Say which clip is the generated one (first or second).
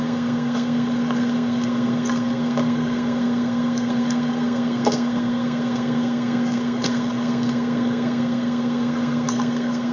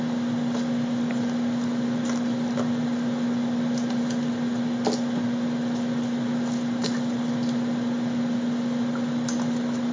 first